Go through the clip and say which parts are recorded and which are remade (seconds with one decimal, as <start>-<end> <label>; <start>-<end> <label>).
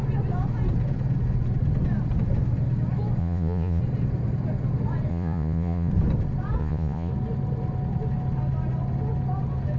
0.0-3.2 recorded; 3.2-3.8 remade; 3.8-5.1 recorded; 5.1-5.9 remade; 5.9-6.6 recorded; 6.6-7.1 remade; 7.1-9.8 recorded